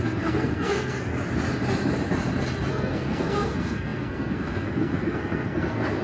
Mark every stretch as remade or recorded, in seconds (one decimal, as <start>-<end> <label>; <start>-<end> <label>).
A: 0.0-1.1 remade; 1.1-2.7 recorded; 2.7-6.0 remade

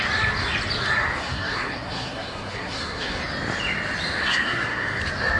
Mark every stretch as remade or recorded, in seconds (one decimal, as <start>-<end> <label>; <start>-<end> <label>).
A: 0.0-1.2 recorded; 1.2-3.2 remade; 3.2-4.2 recorded; 4.2-5.0 remade; 5.0-5.4 recorded